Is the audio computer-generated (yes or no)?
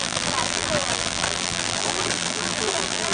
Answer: yes